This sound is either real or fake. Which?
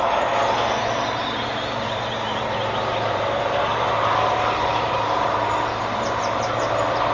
fake